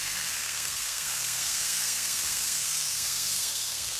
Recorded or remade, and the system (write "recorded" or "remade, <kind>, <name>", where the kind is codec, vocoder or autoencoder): remade, codec, SNAC